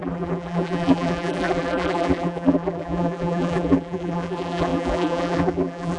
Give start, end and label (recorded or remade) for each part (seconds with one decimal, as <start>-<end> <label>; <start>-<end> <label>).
0.0-6.0 remade